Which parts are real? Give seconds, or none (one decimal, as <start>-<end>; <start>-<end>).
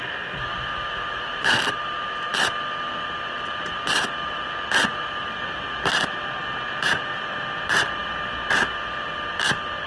0.0-9.9